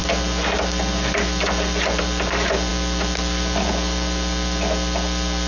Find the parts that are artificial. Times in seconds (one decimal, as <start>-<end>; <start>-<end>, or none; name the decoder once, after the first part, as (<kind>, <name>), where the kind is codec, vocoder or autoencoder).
none